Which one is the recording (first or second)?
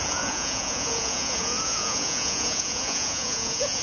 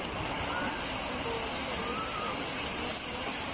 second